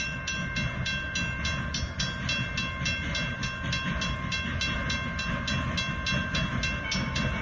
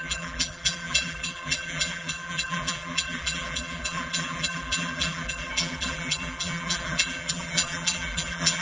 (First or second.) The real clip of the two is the first